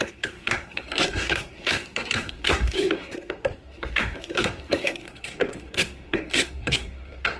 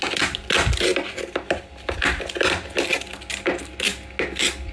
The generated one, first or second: first